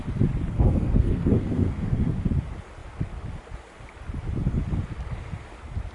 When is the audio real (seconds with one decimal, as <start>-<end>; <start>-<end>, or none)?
0.0-0.5; 2.1-5.9